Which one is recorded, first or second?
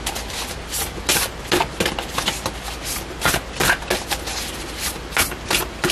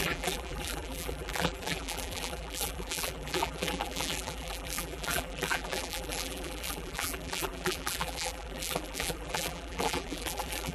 first